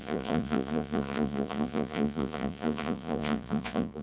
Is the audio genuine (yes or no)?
no